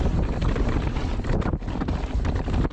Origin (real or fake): real